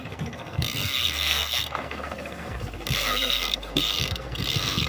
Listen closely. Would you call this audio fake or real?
fake